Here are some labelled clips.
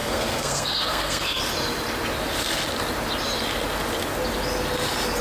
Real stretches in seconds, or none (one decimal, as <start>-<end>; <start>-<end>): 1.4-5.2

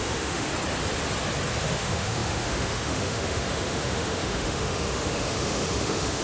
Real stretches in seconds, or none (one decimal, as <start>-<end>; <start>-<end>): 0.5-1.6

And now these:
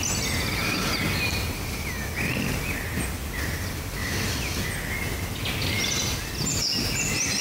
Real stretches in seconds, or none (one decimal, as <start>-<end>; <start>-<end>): 0.0-4.0; 4.6-5.8; 6.3-7.4